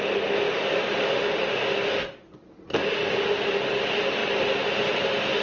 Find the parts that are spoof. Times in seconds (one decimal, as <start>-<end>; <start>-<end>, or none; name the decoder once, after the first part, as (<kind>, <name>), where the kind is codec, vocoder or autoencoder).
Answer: none